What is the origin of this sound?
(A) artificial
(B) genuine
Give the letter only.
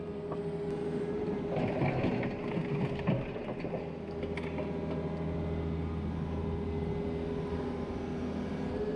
B